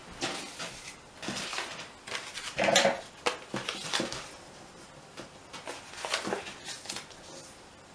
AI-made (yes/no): no